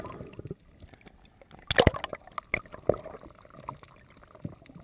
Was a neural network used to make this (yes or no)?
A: no